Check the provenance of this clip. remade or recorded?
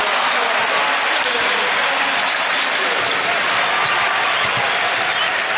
recorded